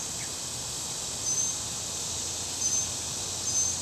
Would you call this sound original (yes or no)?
yes